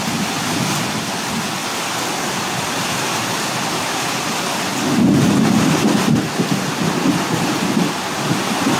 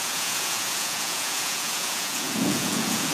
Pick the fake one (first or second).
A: second